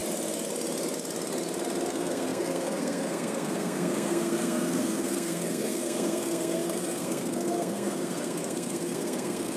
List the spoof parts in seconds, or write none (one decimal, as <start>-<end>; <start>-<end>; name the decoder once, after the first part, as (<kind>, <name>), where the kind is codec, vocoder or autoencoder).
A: 1.9-9.6 (codec, SNAC)